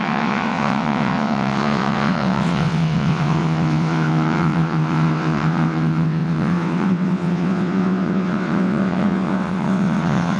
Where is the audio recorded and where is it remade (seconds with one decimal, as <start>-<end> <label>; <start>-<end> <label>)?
0.0-10.4 remade